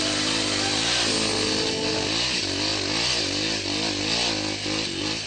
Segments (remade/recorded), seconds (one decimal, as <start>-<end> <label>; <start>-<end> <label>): 0.0-5.3 recorded